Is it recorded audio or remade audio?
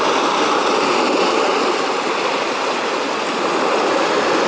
recorded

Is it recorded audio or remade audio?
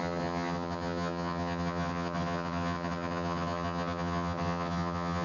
remade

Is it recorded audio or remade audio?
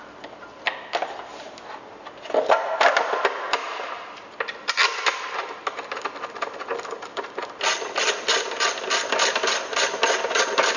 recorded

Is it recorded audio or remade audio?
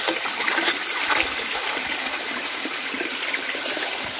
recorded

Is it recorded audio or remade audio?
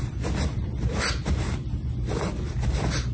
recorded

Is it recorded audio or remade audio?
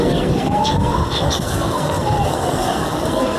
remade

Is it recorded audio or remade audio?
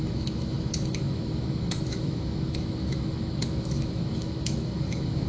remade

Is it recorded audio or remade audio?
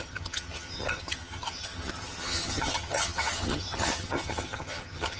remade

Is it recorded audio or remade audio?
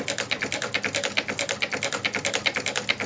recorded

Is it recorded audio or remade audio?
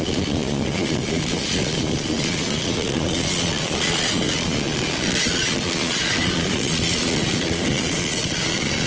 remade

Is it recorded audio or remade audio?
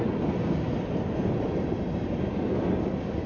recorded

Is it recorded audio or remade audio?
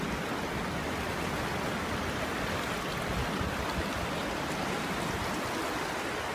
recorded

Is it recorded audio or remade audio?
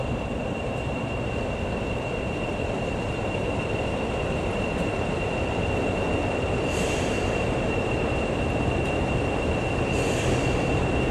remade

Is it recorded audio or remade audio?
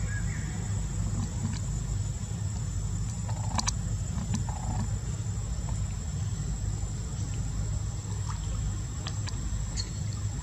recorded